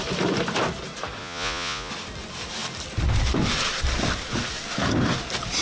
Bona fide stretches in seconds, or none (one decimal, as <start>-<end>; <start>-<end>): 0.0-1.2; 1.9-5.6